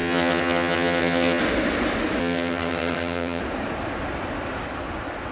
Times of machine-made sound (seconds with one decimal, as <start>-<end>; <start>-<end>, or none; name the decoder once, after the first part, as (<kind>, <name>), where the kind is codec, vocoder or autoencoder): 0.0-1.4 (vocoder, HiFi-GAN); 2.2-3.4

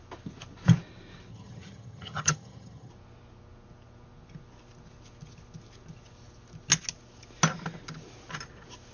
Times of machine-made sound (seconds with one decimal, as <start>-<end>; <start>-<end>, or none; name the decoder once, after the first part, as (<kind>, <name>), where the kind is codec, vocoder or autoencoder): 1.3-2.9 (vocoder, HiFi-GAN)

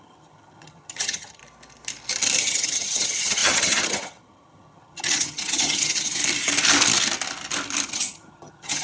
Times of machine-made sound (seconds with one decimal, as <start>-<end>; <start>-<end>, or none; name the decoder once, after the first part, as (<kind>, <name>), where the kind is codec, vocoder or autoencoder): 0.0-1.4 (vocoder, HiFi-GAN); 2.4-6.2; 7.9-8.8

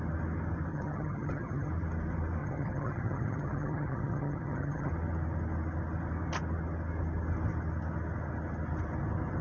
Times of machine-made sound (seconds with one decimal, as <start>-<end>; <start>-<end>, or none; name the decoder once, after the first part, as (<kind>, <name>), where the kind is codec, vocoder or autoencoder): 0.7-1.7 (vocoder, HiFi-GAN); 2.4-4.9